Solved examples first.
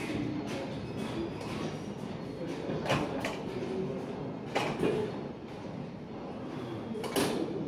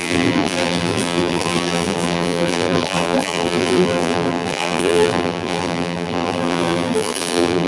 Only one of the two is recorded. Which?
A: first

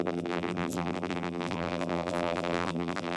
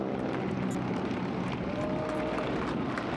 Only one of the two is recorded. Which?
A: second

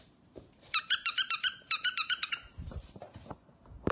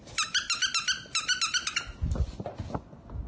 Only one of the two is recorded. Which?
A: second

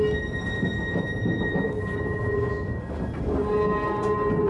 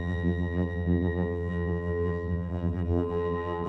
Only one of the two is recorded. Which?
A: first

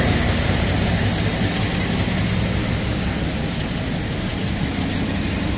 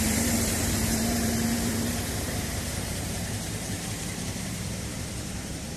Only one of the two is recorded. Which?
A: first